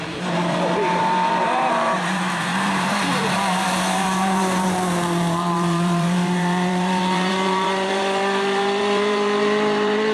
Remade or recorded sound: remade